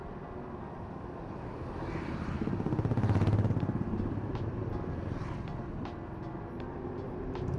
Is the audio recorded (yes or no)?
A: yes